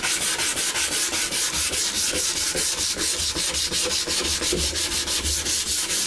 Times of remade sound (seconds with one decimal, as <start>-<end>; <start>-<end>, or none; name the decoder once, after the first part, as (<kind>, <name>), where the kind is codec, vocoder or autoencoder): none